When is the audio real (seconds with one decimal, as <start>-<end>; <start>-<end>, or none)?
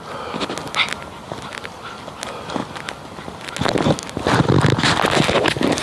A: 0.0-5.8